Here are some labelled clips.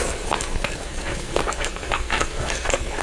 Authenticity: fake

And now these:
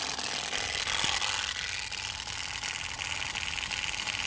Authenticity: real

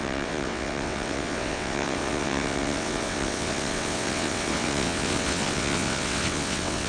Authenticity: fake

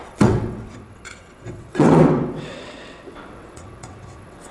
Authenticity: fake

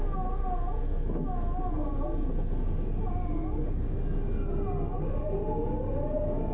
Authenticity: real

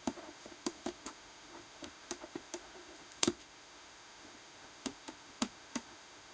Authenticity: fake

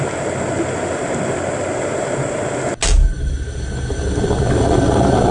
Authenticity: real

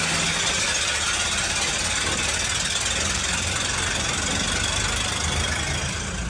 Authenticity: real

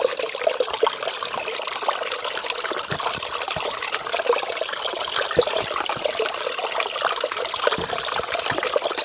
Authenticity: real